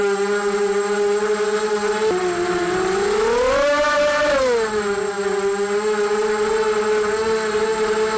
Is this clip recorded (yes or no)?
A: yes